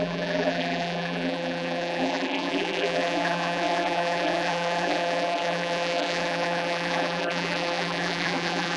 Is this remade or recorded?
remade